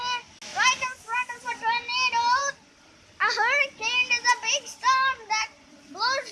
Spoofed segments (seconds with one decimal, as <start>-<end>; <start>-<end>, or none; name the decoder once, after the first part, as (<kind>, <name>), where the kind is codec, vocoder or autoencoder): none